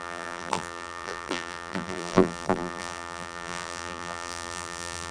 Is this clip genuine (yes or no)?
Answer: no